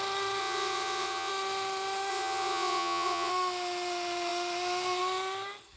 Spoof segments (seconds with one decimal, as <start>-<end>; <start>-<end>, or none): 0.4-1.3; 2.1-3.3